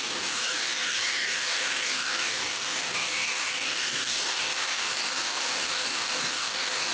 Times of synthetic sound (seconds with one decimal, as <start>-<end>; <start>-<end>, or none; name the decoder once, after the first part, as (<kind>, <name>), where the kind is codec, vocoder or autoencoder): 0.0-6.9 (codec, DAC)